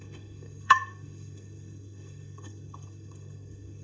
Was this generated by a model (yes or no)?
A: yes